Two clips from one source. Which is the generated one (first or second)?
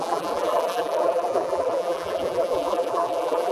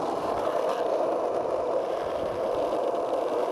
first